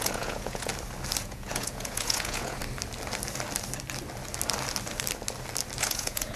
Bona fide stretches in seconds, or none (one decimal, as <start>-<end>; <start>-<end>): 0.7-1.2; 2.6-5.8